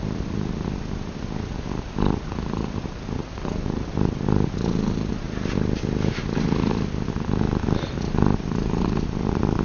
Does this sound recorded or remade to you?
recorded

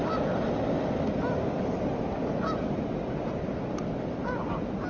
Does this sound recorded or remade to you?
recorded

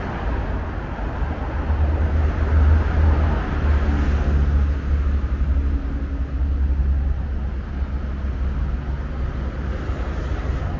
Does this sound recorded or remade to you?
recorded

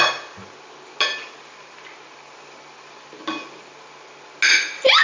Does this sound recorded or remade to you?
recorded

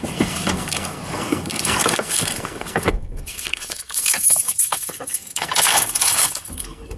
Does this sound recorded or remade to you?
remade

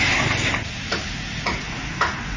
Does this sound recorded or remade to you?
recorded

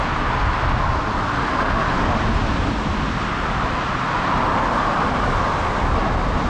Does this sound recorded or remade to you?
recorded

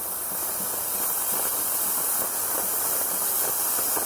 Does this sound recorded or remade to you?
recorded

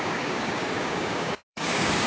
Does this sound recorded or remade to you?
remade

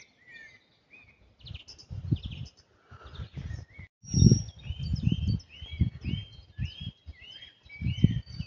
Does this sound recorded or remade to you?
recorded